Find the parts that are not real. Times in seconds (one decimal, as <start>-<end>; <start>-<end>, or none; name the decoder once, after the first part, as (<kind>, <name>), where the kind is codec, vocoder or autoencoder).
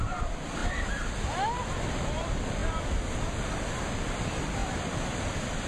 0.0-0.6 (vocoder, BigVGAN v2); 1.9-5.7